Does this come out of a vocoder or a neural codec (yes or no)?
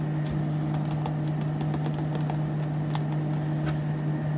no